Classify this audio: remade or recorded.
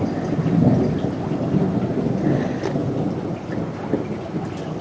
recorded